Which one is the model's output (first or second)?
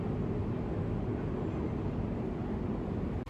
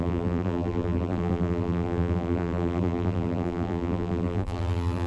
second